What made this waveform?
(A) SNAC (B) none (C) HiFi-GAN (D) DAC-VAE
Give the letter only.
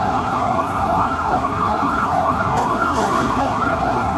A